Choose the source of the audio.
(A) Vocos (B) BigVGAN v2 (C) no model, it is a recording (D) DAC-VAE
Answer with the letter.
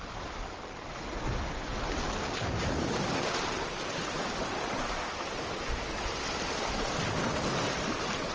C